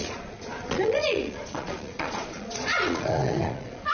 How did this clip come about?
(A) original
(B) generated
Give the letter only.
B